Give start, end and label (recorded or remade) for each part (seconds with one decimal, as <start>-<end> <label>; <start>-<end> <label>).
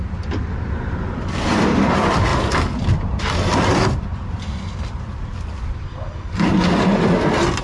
0.0-6.5 remade; 6.5-7.6 recorded